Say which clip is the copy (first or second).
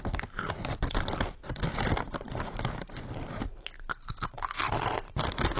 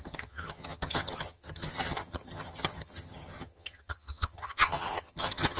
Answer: second